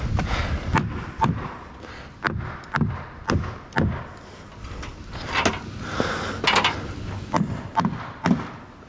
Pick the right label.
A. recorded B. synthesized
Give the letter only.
A